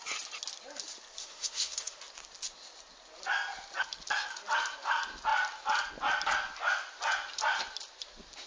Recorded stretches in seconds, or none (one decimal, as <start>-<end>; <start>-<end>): 0.0-1.2; 2.0-8.5